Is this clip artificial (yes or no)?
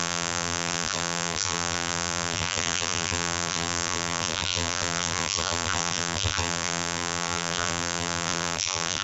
yes